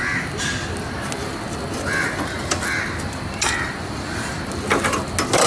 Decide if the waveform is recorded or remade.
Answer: recorded